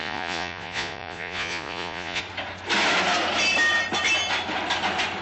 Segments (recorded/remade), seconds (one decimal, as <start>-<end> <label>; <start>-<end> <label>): 0.0-2.2 remade; 2.2-5.2 recorded